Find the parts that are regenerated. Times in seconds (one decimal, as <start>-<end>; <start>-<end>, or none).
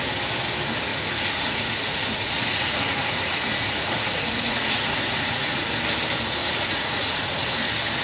0.9-5.7; 6.4-7.5